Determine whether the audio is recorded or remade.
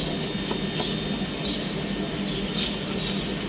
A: recorded